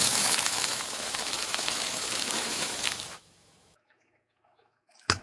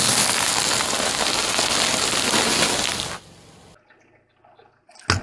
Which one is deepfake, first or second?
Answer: first